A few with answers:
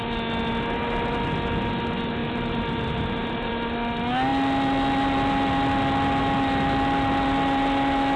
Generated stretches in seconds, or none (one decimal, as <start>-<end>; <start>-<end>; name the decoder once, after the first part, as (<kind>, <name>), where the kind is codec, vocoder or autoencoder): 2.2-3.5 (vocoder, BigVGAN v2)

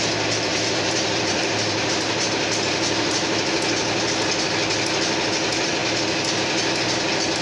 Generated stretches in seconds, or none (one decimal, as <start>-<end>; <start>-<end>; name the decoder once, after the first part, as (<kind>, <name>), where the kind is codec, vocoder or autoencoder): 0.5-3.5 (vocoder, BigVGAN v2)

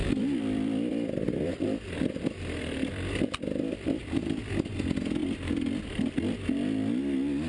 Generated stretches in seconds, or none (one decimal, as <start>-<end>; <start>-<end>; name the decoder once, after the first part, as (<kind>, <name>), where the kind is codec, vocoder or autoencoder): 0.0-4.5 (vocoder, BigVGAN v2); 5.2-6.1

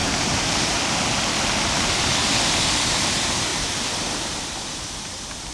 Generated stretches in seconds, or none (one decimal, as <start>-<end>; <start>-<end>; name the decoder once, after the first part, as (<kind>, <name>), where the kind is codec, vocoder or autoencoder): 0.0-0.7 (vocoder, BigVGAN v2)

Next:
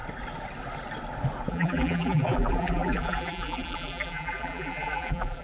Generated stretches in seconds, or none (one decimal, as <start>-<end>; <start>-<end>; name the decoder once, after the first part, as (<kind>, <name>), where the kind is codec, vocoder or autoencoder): 1.5-5.4 (vocoder, BigVGAN v2)

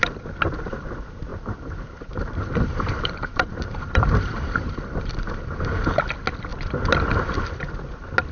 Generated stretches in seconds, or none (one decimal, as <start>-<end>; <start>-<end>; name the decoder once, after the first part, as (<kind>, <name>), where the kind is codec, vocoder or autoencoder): 1.3-6.0 (vocoder, BigVGAN v2)

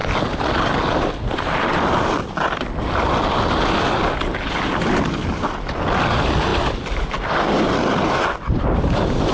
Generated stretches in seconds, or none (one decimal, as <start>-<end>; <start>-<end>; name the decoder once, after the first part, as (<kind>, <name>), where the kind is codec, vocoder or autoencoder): none

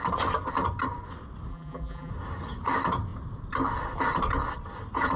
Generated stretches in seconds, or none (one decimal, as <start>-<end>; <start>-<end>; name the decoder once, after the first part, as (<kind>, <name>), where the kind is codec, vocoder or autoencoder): 1.5-2.1 (vocoder, BigVGAN v2)